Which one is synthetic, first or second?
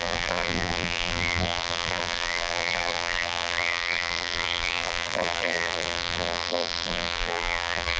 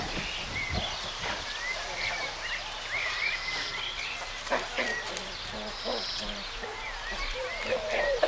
first